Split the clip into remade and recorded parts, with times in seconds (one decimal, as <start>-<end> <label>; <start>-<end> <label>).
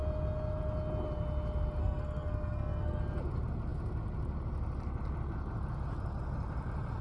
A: 0.0-1.8 recorded; 1.8-3.0 remade; 3.0-7.0 recorded